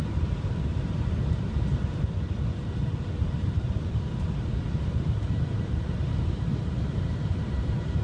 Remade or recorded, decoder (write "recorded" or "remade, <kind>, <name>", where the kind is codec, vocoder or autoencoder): remade, vocoder, BigVGAN v2